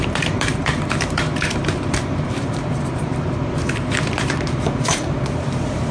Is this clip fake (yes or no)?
yes